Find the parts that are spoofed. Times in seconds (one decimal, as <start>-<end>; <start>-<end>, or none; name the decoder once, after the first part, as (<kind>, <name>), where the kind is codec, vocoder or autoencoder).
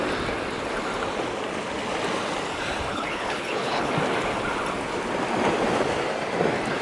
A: 2.9-3.9 (codec, HILCodec)